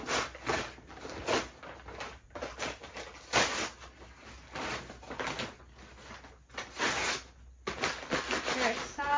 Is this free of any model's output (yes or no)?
yes